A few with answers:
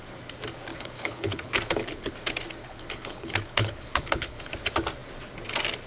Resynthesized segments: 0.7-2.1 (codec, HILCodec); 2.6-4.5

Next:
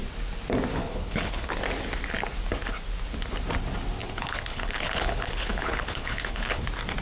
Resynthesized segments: 0.8-1.5 (codec, HILCodec); 4.0-6.6

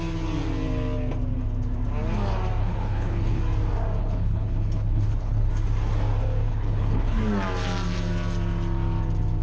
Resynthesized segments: 2.6-3.4 (codec, HILCodec); 4.0-5.5; 6.5-7.2

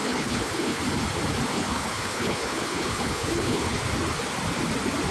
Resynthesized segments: 0.0-0.8 (codec, HILCodec); 1.5-3.8